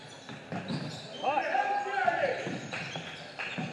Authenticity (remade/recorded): recorded